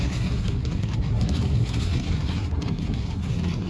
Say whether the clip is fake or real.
fake